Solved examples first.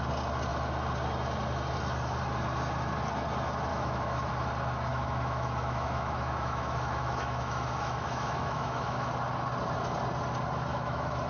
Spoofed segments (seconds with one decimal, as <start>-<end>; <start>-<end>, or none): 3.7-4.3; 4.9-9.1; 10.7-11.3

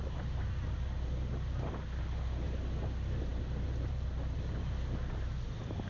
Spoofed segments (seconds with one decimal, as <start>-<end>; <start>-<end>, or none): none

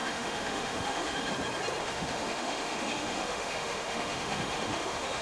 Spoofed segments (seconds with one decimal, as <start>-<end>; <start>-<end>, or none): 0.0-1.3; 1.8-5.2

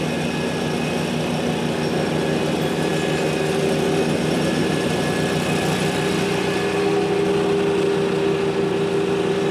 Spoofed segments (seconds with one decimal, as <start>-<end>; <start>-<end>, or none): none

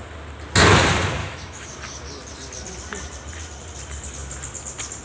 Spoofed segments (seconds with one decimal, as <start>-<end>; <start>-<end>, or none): 1.2-1.7

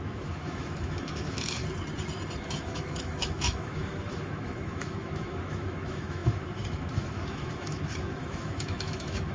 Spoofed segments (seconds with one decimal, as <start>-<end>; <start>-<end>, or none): 0.0-1.6; 2.4-9.3

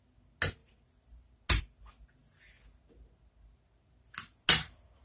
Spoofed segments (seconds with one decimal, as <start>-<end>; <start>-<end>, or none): none

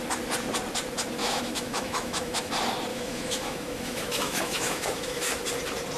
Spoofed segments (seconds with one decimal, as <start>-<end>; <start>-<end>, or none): 1.2-2.5; 2.9-5.3